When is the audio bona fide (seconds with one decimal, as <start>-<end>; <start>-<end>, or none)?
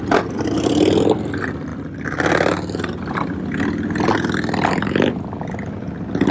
0.0-6.3